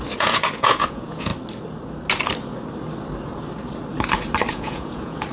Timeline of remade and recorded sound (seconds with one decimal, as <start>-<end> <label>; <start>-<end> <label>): 0.0-1.3 remade; 1.3-4.5 recorded; 4.5-5.3 remade